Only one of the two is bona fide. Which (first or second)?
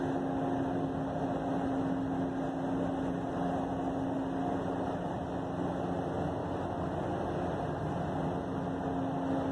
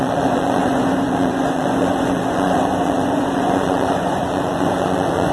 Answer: first